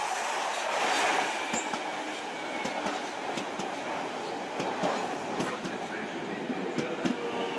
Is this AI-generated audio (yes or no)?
no